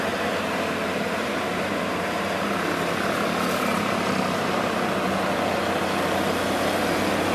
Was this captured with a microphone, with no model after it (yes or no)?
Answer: yes